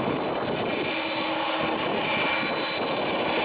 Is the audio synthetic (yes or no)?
no